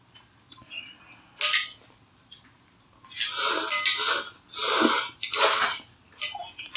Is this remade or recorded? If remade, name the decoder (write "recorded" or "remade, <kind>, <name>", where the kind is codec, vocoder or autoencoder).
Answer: recorded